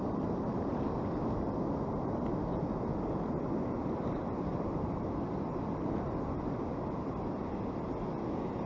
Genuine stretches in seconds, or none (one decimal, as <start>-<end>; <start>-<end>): 0.0-3.8; 7.4-8.7